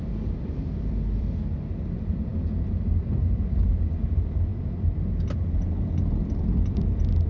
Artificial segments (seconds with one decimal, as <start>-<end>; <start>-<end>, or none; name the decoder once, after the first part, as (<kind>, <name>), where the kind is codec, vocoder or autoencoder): 0.0-2.3 (vocoder, BigVGAN v2); 4.1-4.5; 6.0-7.3